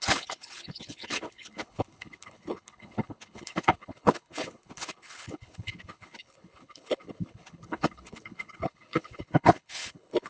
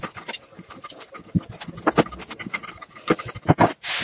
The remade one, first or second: first